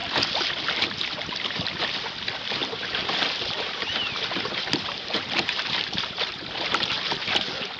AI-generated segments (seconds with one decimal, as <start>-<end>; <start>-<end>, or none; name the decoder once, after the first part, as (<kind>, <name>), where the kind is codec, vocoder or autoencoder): 2.6-7.3 (vocoder, BigVGAN v2)